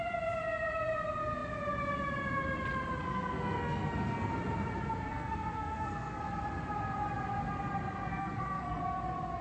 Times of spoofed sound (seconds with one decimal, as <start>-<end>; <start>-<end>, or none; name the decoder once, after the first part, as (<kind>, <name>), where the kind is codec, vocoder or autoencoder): 3.0-4.3 (codec, SNAC); 5.1-6.2; 8.1-8.8

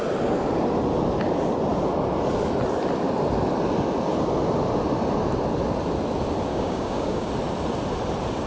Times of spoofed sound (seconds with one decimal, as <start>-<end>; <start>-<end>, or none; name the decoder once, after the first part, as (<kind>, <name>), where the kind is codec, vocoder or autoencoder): 6.5-7.3 (codec, DAC)

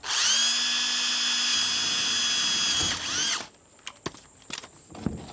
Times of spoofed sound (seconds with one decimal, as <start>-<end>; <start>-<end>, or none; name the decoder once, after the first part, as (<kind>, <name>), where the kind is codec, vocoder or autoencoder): none

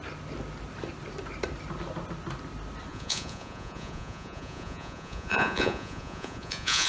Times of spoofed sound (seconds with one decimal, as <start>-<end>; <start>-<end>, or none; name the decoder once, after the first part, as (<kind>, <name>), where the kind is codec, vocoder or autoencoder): 2.9-6.9 (vocoder, Vocos)

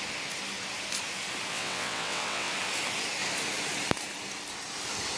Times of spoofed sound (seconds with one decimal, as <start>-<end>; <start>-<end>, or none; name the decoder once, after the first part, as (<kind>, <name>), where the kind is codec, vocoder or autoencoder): 1.5-2.5 (vocoder, WaveNeXt)

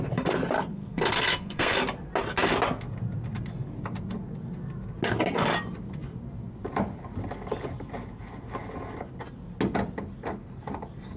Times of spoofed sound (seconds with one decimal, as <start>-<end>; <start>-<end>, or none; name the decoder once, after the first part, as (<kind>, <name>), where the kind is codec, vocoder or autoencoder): 0.7-1.7 (codec, SNAC)

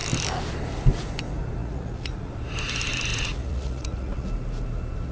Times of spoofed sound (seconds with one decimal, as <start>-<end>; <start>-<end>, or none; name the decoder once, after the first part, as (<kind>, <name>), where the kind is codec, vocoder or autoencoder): 1.6-2.3 (vocoder, Vocos); 3.1-4.3